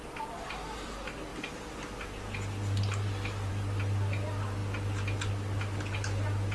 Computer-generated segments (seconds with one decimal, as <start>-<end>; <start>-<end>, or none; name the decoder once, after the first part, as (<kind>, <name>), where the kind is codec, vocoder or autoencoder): none